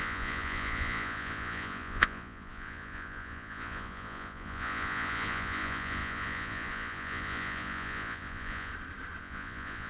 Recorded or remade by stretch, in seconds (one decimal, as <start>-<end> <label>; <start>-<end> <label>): 0.0-8.7 remade; 8.7-9.2 recorded; 9.2-9.9 remade